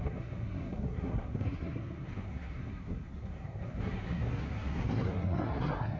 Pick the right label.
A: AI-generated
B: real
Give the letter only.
A